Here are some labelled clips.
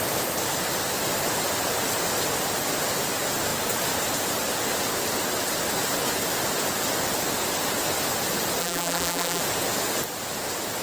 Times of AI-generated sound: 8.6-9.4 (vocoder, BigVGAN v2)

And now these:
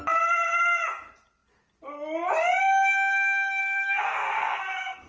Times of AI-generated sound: 3.6-5.1 (codec, SNAC)